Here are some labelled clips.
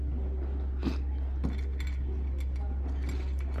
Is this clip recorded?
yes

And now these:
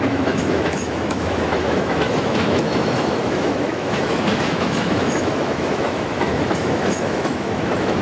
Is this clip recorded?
no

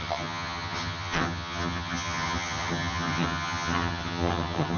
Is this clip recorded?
no